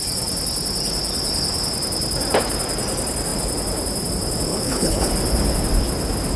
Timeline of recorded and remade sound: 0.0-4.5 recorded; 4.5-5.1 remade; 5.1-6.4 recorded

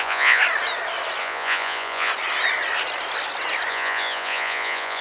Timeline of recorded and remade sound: 0.0-0.4 remade; 0.4-1.2 recorded; 1.2-2.1 remade; 2.1-3.7 recorded; 3.7-5.0 remade

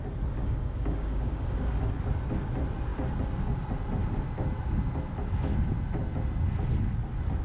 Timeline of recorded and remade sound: 0.0-0.4 recorded; 0.4-2.0 remade; 2.0-7.4 recorded

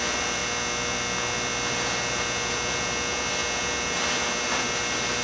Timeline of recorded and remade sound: 0.0-5.2 recorded

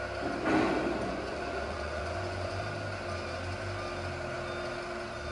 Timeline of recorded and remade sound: 0.0-1.1 recorded; 1.1-2.6 remade; 2.6-5.3 recorded

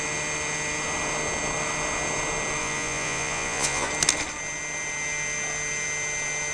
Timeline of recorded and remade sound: 0.0-2.6 recorded; 2.6-3.9 remade; 3.9-6.5 recorded

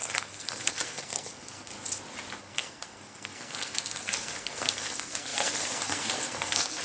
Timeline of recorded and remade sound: 0.0-1.7 remade; 1.7-2.4 recorded; 2.4-6.8 remade

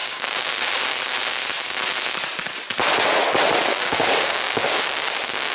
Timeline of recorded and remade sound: 0.0-0.5 remade; 0.5-3.7 recorded; 3.7-4.8 remade; 4.8-5.5 recorded